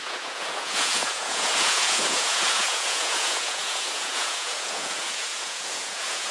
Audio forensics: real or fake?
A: fake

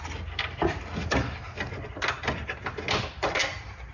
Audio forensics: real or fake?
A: real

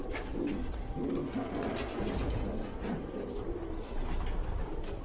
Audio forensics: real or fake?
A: real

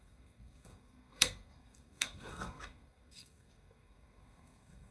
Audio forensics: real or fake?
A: fake